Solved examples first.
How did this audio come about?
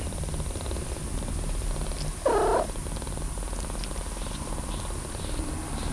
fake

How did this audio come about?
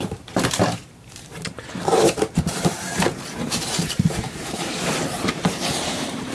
fake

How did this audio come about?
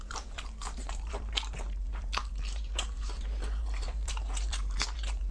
fake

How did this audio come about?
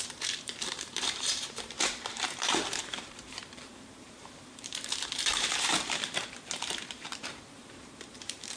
fake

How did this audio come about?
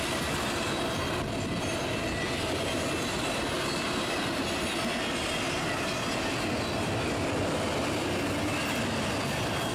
real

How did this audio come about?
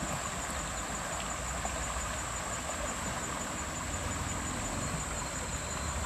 real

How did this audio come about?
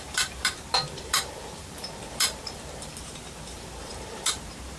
fake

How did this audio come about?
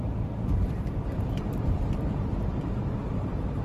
fake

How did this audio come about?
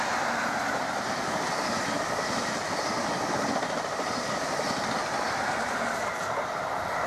real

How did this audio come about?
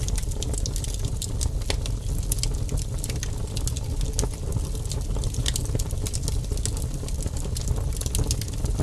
real